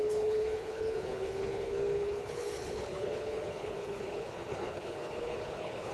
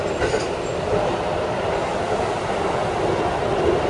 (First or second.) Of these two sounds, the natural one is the second